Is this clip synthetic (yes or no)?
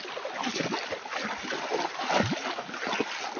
no